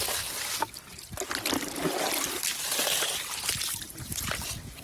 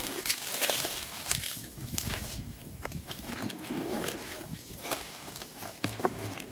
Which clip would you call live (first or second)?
first